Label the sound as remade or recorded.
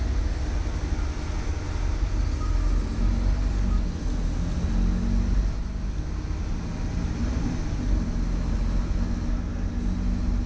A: recorded